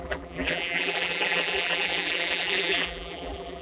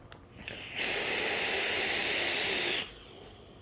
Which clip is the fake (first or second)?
first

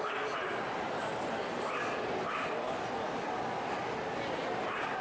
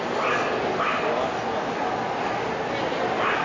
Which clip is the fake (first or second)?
first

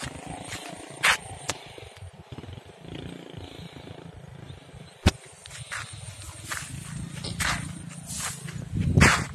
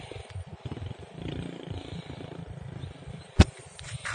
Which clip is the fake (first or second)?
second